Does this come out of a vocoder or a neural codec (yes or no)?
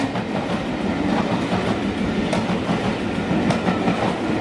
no